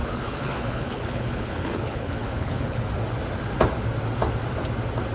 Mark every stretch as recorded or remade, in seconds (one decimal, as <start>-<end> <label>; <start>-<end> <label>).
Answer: 0.0-2.9 remade; 2.9-5.1 recorded